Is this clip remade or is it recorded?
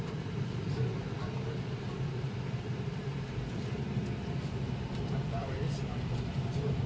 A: remade